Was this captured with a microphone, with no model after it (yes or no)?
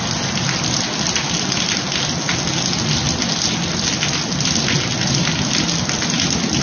yes